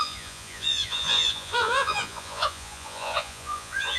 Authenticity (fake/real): fake